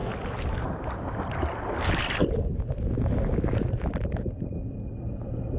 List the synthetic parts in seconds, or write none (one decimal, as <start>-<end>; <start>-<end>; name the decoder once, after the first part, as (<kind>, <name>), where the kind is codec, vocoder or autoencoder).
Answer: none